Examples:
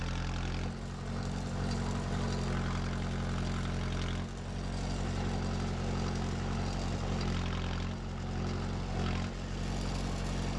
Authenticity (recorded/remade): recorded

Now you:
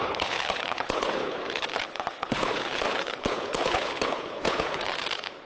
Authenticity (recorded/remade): remade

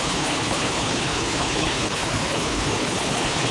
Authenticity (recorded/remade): remade